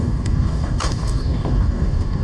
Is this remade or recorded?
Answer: remade